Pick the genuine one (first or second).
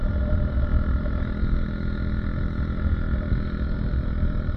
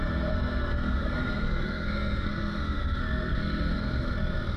first